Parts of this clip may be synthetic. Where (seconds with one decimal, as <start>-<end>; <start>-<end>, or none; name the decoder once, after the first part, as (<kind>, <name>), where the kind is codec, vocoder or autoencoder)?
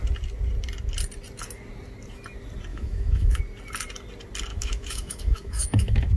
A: 2.7-3.4 (autoencoder, DAC-VAE); 4.5-6.2